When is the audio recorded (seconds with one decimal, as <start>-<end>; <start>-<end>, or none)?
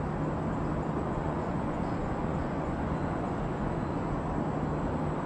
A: 0.0-1.0; 4.2-5.3